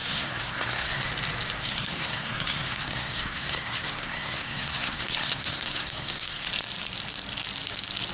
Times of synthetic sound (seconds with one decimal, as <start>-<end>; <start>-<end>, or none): 0.0-1.1; 1.6-6.5